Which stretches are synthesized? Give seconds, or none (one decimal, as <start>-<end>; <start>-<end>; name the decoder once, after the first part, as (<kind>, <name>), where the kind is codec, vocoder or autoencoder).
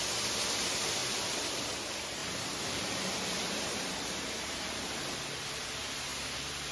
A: 1.0-1.8 (vocoder, BigVGAN v2); 2.2-4.7